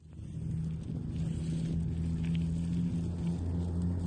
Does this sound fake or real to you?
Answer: real